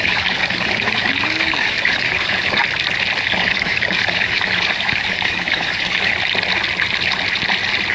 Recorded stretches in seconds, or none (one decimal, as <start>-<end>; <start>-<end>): 2.6-3.3; 6.1-7.9